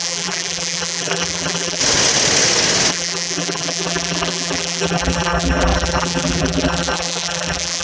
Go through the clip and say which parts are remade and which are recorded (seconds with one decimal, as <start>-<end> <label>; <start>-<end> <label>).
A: 0.0-1.8 remade; 1.8-2.9 recorded; 2.9-7.8 remade